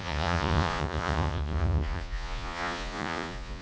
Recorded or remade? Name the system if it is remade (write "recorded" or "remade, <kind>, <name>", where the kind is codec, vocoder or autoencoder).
remade, vocoder, Vocos